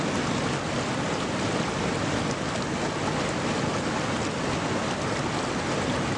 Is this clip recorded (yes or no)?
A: yes